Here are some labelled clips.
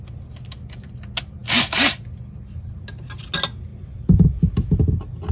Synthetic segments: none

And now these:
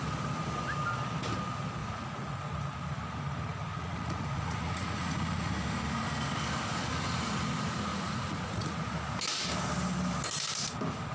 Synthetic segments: 1.8-2.4; 3.7-5.5; 7.9-8.8

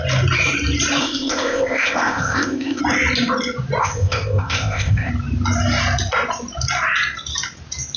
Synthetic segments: 1.0-2.8; 3.8-5.1

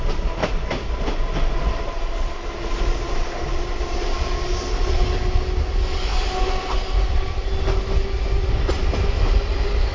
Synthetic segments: none

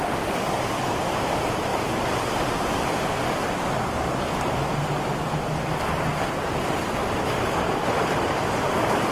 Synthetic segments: 0.0-1.7; 2.4-9.1